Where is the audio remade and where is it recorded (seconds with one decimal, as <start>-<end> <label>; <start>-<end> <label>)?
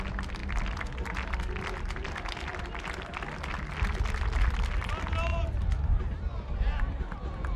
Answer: 0.0-2.5 recorded; 2.5-3.4 remade; 3.4-5.3 recorded; 5.3-7.6 remade